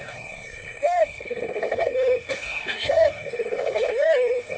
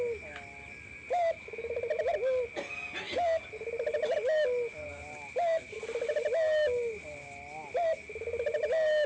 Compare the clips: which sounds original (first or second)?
second